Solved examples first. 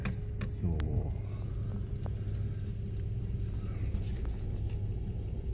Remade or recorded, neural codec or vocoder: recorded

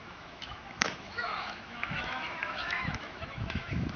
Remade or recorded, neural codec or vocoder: remade, autoencoder, DAC-VAE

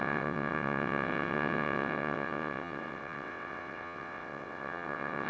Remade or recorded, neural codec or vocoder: remade, vocoder, WaveNeXt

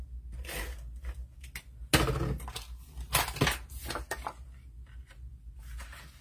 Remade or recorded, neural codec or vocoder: recorded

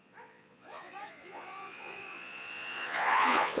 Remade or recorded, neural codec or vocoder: remade, vocoder, Vocos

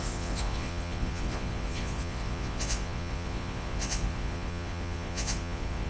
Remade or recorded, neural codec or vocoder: remade, vocoder, Vocos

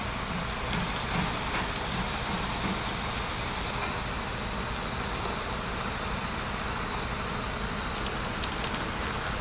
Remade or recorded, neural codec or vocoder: recorded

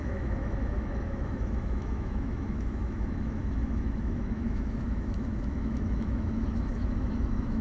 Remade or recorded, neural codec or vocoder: remade, autoencoder, DAC-VAE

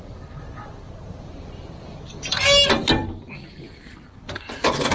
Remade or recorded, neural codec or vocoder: recorded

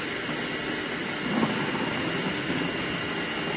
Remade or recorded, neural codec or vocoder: recorded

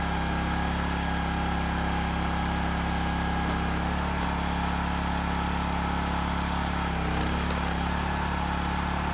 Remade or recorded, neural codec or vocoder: recorded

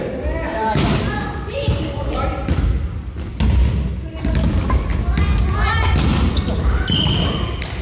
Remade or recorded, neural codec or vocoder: recorded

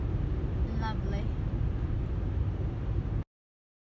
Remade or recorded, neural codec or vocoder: recorded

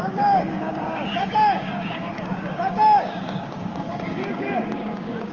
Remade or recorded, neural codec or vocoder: remade, codec, DAC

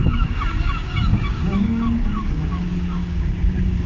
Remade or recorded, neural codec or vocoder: remade, codec, DAC